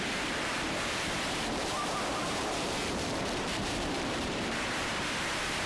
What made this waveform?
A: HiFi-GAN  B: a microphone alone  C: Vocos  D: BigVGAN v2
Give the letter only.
D